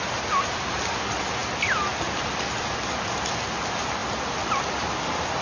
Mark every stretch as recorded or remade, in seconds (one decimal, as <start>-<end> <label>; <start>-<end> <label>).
0.0-5.4 recorded

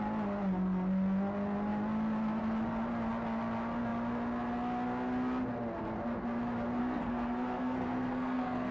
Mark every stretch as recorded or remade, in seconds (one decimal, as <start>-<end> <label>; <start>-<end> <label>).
0.0-6.8 recorded; 6.8-8.7 remade

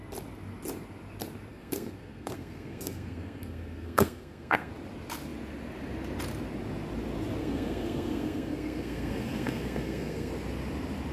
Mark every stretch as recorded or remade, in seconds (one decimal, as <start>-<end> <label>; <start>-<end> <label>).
0.0-1.5 recorded; 1.5-4.7 remade; 4.7-7.4 recorded; 7.4-10.3 remade; 10.3-11.1 recorded

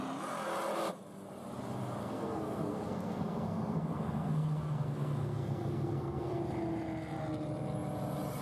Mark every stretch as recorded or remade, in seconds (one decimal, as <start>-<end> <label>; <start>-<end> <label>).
0.0-2.0 recorded; 2.0-6.4 remade; 6.4-8.4 recorded

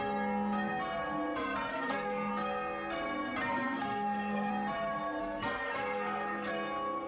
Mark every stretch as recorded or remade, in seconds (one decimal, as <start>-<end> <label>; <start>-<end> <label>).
0.0-1.7 recorded; 1.7-2.3 remade; 2.3-3.5 recorded; 3.5-4.5 remade; 4.5-5.2 recorded; 5.2-6.5 remade; 6.5-7.1 recorded

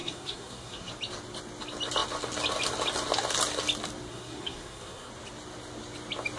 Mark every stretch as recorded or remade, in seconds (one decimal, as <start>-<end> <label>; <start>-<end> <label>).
0.0-0.9 remade; 0.9-4.1 recorded; 4.1-5.1 remade; 5.1-6.4 recorded

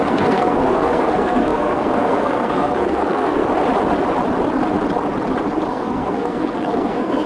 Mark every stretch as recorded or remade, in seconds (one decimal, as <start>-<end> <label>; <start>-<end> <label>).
0.0-3.4 remade; 3.4-5.7 recorded; 5.7-7.3 remade